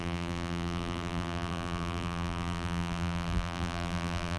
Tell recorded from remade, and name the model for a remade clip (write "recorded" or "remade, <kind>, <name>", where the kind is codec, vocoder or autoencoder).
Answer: remade, vocoder, BigVGAN v2